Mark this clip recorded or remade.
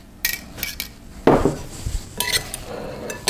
recorded